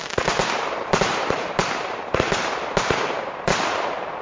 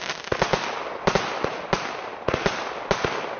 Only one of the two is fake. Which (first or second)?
first